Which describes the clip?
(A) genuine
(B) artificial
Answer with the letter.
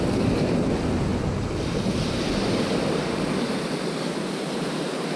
A